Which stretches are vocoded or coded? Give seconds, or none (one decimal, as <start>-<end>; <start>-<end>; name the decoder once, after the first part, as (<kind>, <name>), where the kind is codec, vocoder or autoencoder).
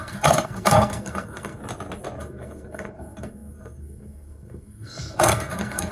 0.0-1.6 (codec, SNAC); 2.2-5.9